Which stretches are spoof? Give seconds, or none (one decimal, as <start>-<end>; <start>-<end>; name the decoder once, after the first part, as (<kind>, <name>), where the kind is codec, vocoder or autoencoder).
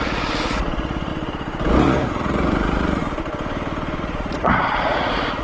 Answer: 0.0-1.1 (vocoder, Vocos); 1.8-3.0; 4.0-5.4